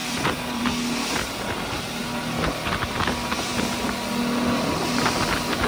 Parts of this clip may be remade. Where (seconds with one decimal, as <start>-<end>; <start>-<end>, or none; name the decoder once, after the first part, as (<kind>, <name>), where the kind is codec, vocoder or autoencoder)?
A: 0.0-0.6 (vocoder, BigVGAN v2)